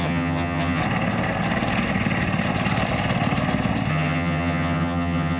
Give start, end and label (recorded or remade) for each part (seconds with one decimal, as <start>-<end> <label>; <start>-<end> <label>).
0.0-0.8 remade; 0.8-3.9 recorded; 3.9-5.4 remade